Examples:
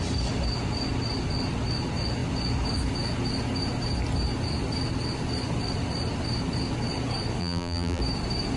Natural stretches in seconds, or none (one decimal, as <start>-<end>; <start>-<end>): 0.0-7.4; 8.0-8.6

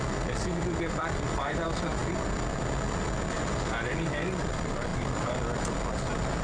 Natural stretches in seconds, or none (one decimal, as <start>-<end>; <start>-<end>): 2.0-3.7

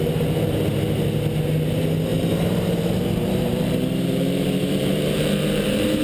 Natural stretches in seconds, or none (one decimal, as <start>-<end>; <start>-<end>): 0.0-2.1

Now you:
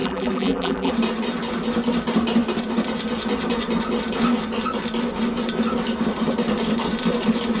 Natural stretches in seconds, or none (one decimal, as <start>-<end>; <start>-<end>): 0.9-7.6

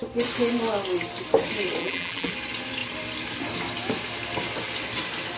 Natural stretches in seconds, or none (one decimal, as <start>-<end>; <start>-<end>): 0.0-1.8; 2.3-5.4

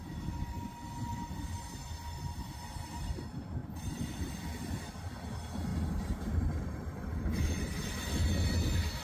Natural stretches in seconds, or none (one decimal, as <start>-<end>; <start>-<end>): 0.0-3.6; 4.3-5.7; 8.1-9.0

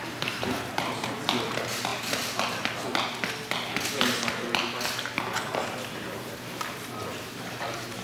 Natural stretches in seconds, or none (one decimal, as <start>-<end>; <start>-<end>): 1.9-6.7

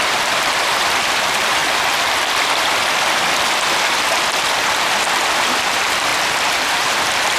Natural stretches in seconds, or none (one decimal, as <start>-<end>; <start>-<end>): 1.6-5.6; 6.1-6.7